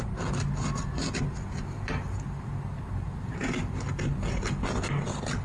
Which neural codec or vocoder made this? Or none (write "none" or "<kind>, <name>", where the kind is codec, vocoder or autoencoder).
none